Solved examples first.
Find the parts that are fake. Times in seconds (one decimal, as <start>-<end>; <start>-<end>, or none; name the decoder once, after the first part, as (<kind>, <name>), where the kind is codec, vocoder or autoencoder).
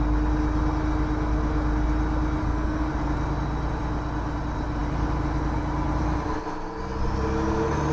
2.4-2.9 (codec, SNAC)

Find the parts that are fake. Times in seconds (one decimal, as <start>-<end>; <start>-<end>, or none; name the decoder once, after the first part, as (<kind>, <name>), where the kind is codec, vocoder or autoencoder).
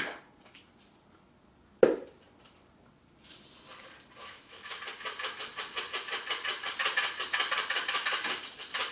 4.2-4.8 (autoencoder, DAC-VAE)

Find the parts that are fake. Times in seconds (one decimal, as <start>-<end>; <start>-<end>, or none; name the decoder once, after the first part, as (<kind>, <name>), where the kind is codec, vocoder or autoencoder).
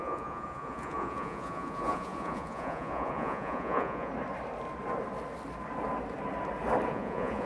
0.0-4.1 (vocoder, Vocos); 6.9-7.5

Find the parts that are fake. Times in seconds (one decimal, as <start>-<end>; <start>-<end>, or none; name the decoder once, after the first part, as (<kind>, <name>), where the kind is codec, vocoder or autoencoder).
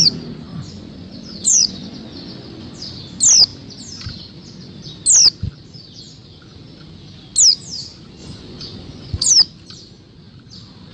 0.5-3.0 (vocoder, Vocos); 8.2-9.3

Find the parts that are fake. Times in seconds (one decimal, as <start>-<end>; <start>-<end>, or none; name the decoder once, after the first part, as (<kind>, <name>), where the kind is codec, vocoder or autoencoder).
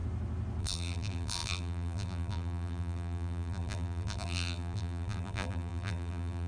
0.6-6.5 (vocoder, BigVGAN v2)